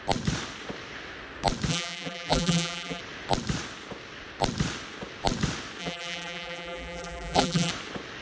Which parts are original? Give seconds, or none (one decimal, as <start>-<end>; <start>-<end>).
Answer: 0.0-1.7; 3.0-5.8; 7.7-8.2